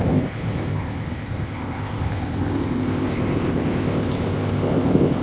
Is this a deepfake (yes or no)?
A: yes